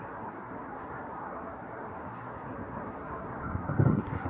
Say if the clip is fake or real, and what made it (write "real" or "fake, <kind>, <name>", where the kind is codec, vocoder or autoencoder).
fake, codec, SNAC